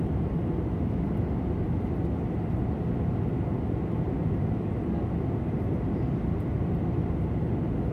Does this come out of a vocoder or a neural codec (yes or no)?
no